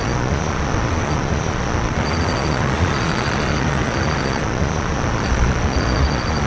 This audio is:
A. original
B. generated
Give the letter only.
B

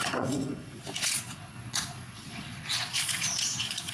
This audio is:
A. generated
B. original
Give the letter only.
A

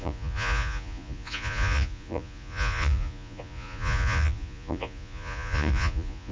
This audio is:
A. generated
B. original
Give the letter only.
A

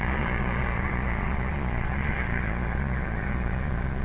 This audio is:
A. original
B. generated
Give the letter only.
B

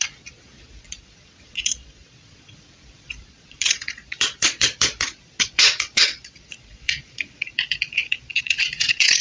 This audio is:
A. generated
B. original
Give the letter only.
A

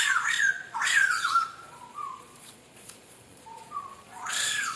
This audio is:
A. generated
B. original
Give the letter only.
A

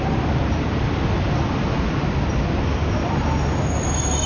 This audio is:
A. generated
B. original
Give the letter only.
B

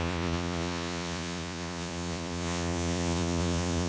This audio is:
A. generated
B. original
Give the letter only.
A